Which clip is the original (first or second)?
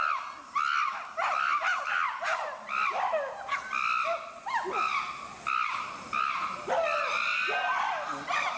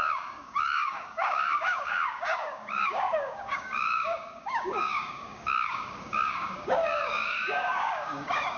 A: first